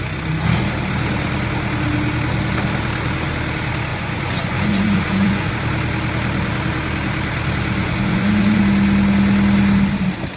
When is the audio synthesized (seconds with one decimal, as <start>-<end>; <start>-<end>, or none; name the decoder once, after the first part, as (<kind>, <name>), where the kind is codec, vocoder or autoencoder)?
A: 3.9-5.5 (vocoder, Vocos); 7.8-8.6